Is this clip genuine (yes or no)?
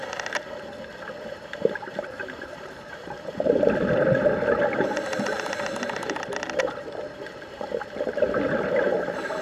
yes